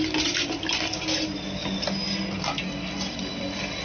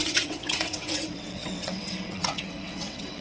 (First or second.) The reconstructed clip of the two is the second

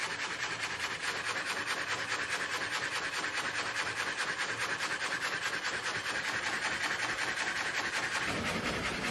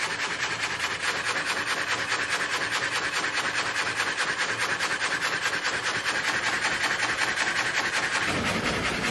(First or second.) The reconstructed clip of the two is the first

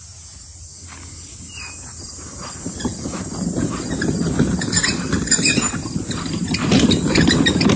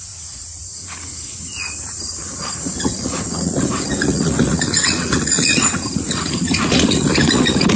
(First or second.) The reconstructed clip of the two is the second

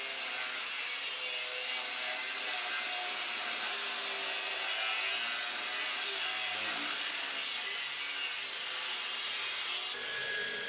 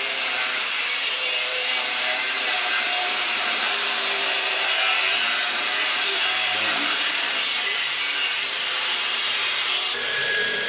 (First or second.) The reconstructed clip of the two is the second